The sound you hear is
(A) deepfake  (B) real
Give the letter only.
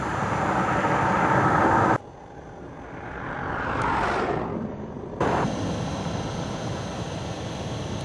B